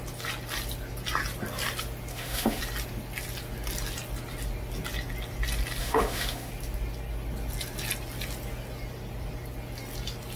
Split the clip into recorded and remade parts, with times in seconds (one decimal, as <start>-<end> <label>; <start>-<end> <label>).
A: 0.0-2.1 recorded; 2.1-2.6 remade; 2.6-5.8 recorded; 5.8-6.5 remade; 6.5-10.4 recorded